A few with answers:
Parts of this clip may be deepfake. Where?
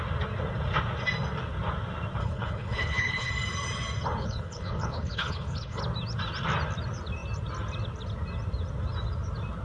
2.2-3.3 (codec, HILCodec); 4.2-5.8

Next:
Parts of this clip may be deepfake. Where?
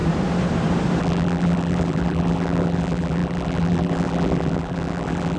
1.0-5.4 (vocoder, BigVGAN v2)